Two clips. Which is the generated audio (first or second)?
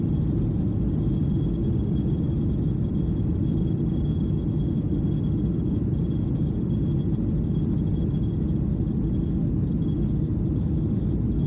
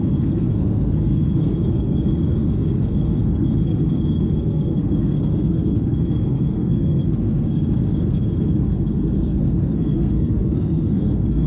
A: second